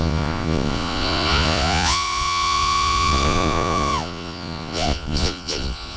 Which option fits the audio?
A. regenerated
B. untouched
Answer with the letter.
A